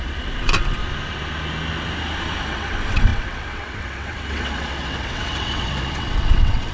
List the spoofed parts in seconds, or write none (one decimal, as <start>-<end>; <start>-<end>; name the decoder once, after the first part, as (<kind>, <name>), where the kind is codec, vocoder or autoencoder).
0.0-0.8 (vocoder, WaveNeXt); 2.4-6.7

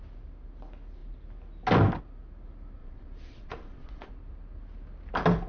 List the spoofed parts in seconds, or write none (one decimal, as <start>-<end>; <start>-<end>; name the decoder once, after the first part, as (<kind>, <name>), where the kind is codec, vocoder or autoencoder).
2.8-4.1 (vocoder, Vocos)

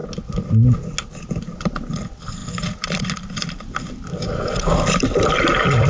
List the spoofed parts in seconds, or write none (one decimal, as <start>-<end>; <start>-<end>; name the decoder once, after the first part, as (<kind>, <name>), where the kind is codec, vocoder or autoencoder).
1.3-5.9 (vocoder, BigVGAN v2)